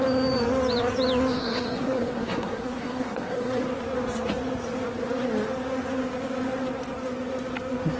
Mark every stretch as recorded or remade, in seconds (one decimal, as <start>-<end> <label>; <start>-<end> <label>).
0.0-1.4 recorded; 1.4-3.6 remade; 3.6-8.0 recorded